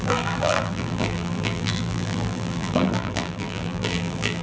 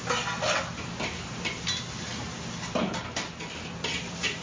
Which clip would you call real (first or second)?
second